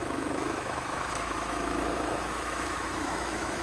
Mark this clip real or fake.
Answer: fake